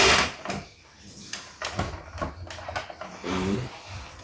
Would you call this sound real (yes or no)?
yes